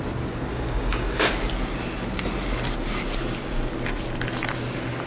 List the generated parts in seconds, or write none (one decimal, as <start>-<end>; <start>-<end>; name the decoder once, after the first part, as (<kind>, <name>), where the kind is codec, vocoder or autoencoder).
0.5-1.3 (codec, DAC)